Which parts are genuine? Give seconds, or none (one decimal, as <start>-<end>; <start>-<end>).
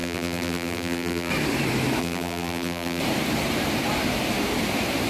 1.3-2.0; 3.0-5.1